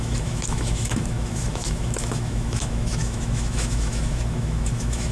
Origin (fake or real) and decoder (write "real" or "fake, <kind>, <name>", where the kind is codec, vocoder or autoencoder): fake, autoencoder, DAC-VAE